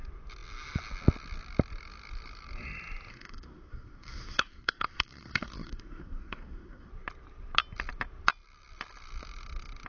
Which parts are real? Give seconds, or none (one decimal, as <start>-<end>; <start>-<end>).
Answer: 0.0-3.1; 6.9-9.9